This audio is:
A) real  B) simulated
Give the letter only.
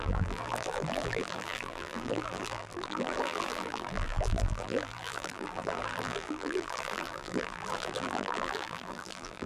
B